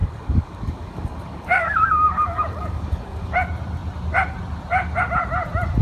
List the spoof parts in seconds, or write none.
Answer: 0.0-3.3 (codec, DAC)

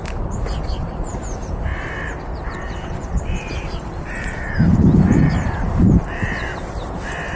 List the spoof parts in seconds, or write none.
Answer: 0.0-1.7 (vocoder, BigVGAN v2); 2.4-6.5

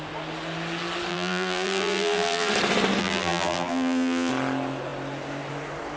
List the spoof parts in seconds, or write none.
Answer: 1.1-2.5 (vocoder, BigVGAN v2); 3.0-4.3

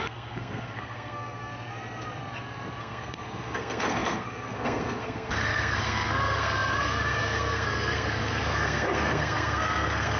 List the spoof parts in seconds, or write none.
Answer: 0.0-1.5 (codec, SNAC); 2.8-10.2

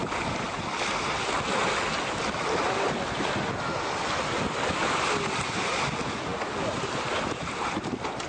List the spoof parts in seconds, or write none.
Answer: none

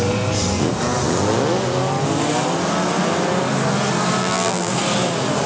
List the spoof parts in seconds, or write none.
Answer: 4.2-4.7 (vocoder, BigVGAN v2)

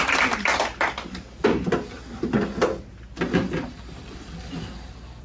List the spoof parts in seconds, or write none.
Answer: 0.0-0.5 (vocoder, BigVGAN v2); 3.6-5.2